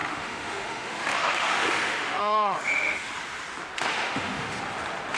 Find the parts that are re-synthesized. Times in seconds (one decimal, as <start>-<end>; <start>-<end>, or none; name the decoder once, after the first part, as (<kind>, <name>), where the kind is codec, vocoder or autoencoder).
0.0-3.1 (autoencoder, DAC-VAE); 3.9-4.6